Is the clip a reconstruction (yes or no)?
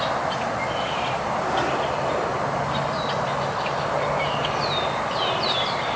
no